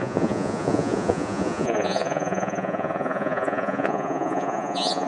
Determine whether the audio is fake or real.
fake